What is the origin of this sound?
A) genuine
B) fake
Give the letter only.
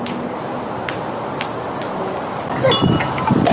A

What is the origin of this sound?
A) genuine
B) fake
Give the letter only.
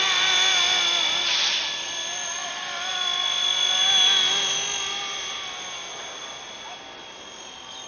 A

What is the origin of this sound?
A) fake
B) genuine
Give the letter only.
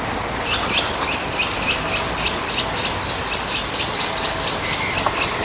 B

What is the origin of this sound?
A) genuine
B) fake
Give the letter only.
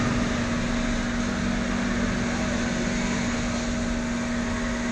A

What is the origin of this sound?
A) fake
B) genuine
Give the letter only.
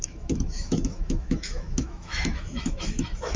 A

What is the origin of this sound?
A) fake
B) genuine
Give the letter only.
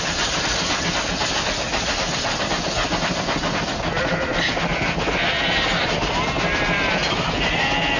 A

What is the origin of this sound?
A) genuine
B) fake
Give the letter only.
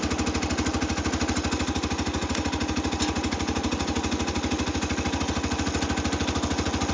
A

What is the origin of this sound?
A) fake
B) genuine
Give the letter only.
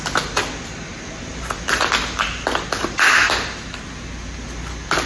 B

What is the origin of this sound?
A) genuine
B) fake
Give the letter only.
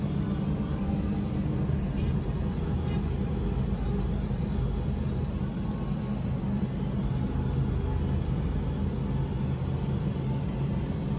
A